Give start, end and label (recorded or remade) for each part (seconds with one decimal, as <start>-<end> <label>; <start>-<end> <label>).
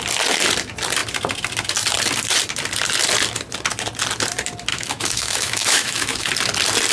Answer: 0.0-4.7 recorded; 4.7-6.3 remade; 6.3-6.9 recorded